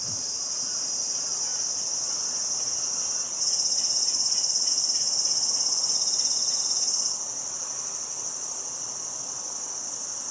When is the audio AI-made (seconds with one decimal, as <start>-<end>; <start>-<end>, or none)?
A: none